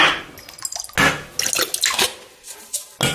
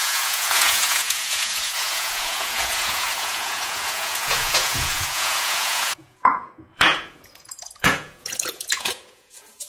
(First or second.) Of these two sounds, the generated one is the second